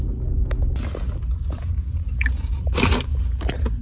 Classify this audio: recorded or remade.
recorded